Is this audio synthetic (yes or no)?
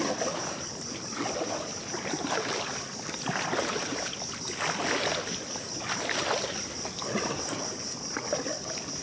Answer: no